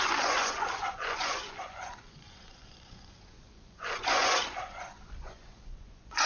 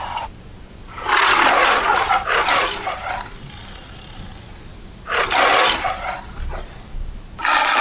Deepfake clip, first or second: first